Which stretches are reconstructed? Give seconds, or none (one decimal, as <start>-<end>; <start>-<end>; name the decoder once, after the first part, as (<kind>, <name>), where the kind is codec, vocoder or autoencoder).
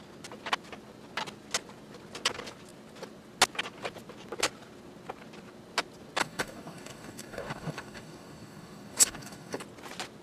6.2-9.6 (codec, DAC)